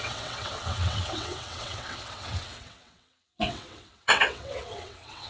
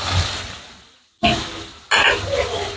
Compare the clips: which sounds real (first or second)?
second